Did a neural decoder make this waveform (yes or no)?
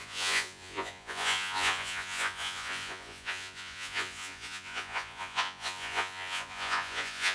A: yes